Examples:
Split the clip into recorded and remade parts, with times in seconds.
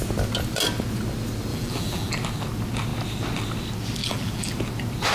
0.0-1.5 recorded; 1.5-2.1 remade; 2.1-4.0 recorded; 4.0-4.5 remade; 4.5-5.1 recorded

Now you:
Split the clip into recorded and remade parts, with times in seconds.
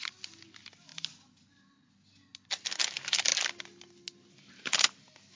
0.0-5.4 recorded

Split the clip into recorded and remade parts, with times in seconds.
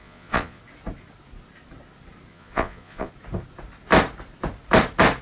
0.0-0.6 remade; 0.6-2.3 recorded; 2.3-3.1 remade; 3.1-5.2 recorded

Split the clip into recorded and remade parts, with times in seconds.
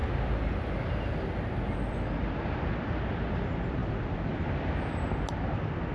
0.0-5.9 recorded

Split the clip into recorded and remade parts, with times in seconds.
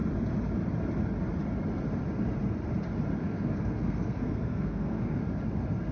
0.0-3.2 recorded; 3.2-5.2 remade; 5.2-5.9 recorded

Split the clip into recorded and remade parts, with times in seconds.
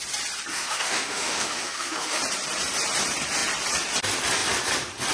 0.0-0.5 recorded; 0.5-2.2 remade; 2.2-5.1 recorded